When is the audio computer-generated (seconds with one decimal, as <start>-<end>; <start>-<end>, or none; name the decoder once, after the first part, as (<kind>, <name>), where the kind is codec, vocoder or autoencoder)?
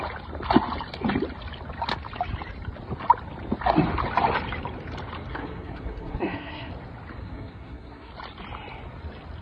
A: 5.3-6.7 (codec, SNAC); 7.2-8.1